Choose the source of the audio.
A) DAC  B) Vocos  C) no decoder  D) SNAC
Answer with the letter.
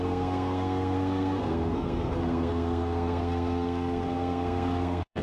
D